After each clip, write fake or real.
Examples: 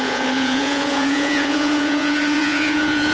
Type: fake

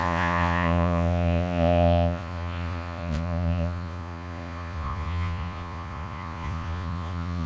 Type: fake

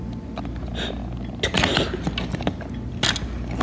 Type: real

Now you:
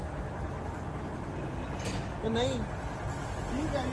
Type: real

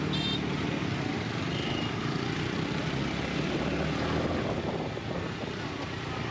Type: real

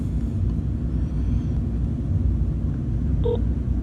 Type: real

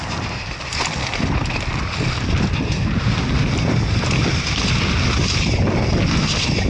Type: real